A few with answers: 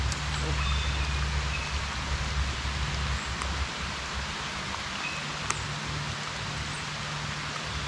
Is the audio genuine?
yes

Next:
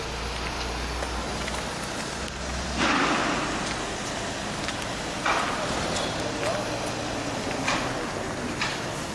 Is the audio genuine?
yes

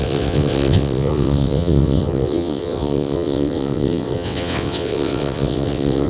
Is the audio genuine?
no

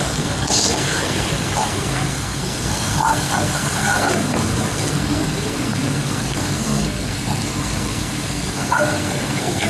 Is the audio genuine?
no